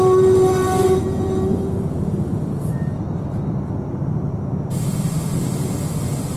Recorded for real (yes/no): yes